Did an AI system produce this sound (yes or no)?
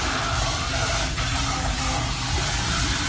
no